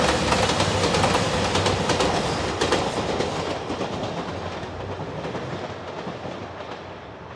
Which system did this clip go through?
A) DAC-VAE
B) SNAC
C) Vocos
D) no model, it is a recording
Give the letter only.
D